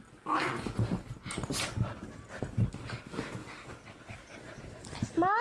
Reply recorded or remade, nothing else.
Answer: recorded